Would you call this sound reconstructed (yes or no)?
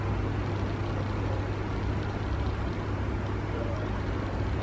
no